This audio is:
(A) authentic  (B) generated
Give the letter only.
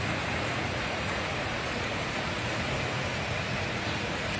B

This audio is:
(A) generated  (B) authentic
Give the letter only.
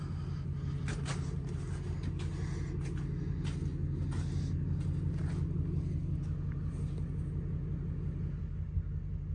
B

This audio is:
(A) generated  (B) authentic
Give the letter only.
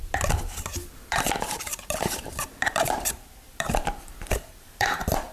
A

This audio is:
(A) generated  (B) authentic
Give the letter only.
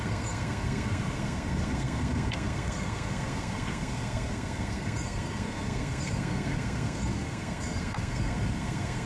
A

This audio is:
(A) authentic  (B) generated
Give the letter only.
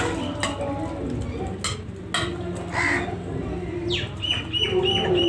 A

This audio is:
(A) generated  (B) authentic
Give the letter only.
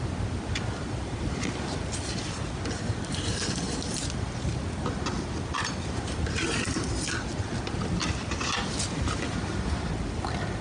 B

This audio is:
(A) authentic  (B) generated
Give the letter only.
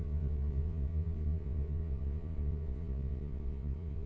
B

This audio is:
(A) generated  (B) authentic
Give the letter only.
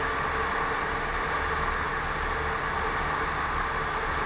B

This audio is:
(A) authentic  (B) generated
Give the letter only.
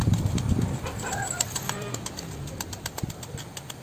A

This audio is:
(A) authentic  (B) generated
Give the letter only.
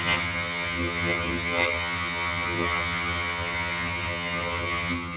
B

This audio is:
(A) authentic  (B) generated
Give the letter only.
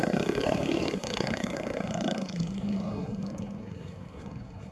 B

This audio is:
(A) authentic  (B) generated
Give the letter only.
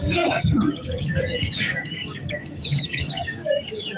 B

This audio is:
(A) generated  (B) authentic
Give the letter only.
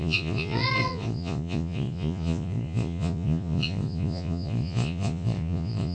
A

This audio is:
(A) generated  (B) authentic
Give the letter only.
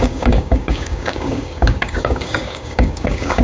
A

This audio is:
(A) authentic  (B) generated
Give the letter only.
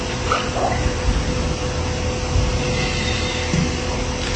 A